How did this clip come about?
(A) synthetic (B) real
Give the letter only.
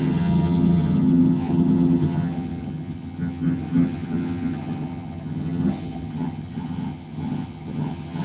A